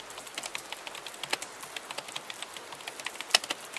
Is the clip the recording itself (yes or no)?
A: yes